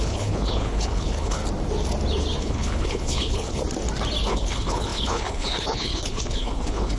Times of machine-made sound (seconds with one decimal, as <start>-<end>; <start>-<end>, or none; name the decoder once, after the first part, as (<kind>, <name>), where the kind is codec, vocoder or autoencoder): 0.0-1.4 (codec, HILCodec); 2.4-3.6; 4.3-7.0